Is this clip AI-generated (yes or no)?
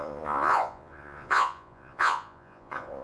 yes